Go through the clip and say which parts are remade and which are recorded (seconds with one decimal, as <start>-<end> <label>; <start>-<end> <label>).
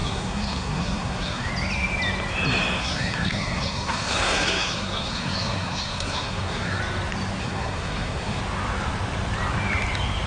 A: 0.0-1.5 remade; 1.5-2.8 recorded; 2.8-6.8 remade; 6.8-7.4 recorded; 7.4-8.4 remade; 8.4-10.3 recorded